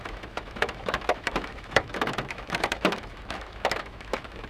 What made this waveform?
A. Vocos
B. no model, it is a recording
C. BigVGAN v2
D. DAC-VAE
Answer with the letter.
D